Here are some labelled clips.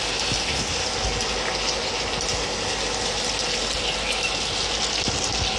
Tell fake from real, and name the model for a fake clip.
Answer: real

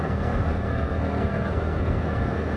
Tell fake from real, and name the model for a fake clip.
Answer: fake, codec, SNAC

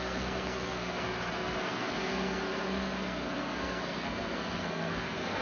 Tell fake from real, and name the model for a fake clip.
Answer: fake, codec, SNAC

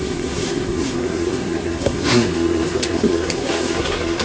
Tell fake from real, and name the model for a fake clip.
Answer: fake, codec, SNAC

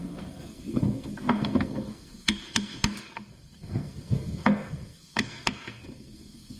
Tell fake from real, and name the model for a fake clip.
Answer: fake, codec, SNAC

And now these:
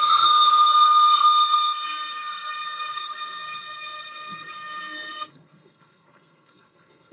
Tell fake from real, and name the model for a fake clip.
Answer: fake, codec, SNAC